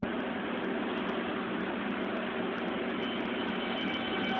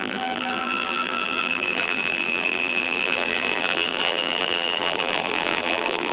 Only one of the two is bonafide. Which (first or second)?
first